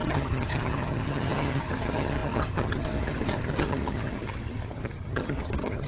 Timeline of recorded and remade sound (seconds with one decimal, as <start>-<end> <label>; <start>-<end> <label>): 0.0-5.9 remade